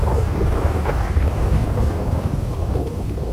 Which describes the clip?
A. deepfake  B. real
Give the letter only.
A